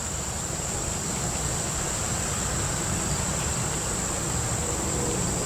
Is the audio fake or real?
fake